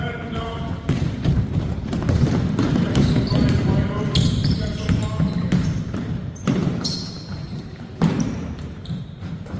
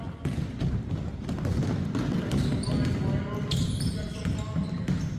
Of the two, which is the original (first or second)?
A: second